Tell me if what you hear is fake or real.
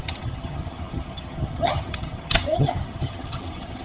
fake